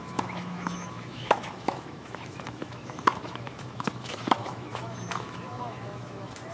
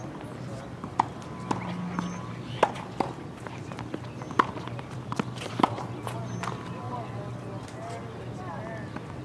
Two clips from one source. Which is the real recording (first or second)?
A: second